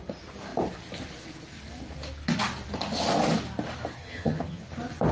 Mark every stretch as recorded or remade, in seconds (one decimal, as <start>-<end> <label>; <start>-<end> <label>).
0.0-4.0 recorded; 4.0-4.6 remade; 4.6-5.1 recorded